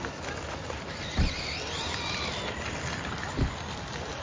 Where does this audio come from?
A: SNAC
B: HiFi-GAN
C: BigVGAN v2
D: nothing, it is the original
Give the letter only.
D